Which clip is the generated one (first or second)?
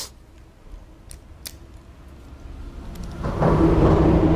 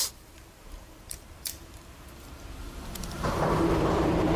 second